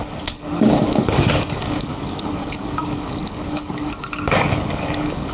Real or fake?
fake